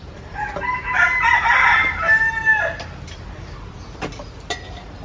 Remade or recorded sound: recorded